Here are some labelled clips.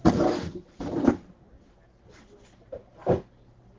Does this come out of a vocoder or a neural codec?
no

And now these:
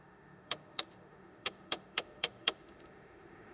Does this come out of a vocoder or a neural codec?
yes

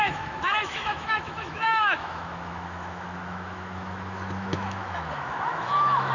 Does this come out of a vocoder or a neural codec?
yes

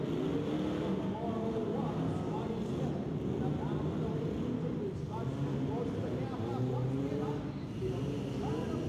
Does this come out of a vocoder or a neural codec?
no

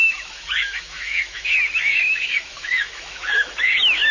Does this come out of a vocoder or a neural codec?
yes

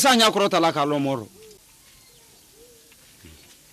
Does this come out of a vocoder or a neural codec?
no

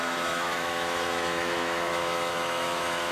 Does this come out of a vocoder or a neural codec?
yes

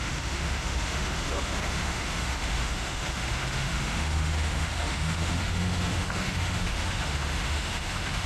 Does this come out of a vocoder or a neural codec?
yes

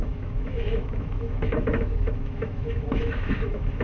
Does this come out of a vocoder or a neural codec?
yes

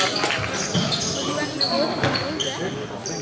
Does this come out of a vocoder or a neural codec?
no